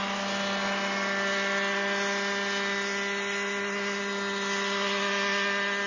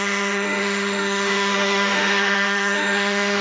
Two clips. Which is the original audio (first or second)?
first